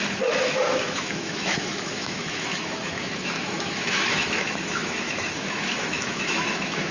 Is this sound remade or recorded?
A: remade